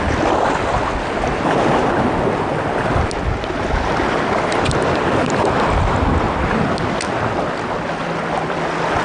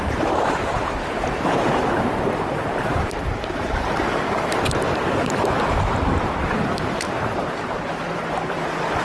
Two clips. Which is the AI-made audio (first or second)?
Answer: second